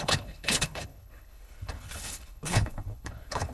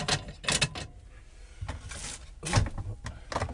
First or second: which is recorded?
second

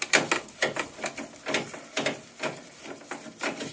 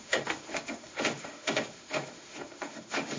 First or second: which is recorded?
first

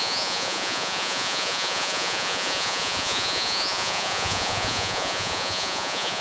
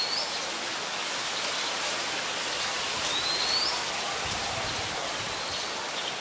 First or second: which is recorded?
second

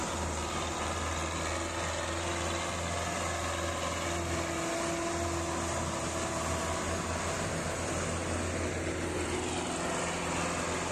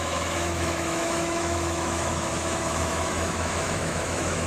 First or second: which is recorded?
first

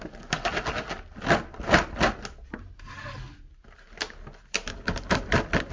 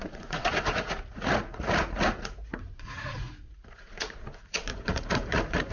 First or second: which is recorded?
first